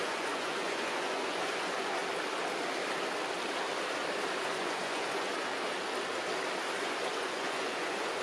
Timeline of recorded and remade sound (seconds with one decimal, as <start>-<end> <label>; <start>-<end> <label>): 0.0-2.0 remade; 2.0-4.4 recorded; 4.4-5.5 remade; 5.5-6.8 recorded; 6.8-8.2 remade